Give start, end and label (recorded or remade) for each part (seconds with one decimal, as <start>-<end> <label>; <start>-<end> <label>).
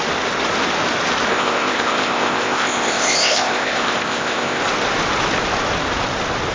0.0-1.3 recorded; 1.3-4.6 remade; 4.6-6.5 recorded